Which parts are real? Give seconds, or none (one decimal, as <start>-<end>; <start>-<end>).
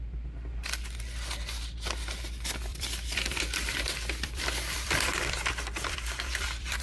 0.0-2.7